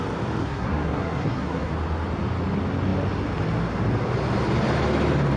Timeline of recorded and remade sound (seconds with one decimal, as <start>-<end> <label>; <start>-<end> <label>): 0.0-0.4 recorded; 0.4-1.7 remade; 1.7-5.4 recorded